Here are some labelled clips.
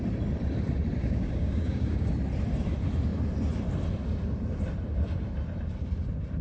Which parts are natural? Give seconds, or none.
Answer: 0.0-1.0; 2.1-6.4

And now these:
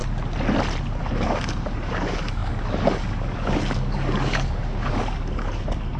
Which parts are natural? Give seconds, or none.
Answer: 0.0-1.0

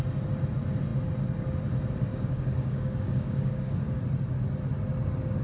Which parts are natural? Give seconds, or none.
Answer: 0.0-2.1; 4.0-5.4

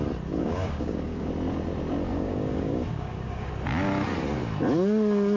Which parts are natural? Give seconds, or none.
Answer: 0.0-0.4; 1.3-2.1; 3.5-5.4